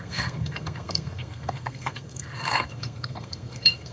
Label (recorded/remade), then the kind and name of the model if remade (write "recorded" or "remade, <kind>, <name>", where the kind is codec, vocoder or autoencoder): remade, codec, SNAC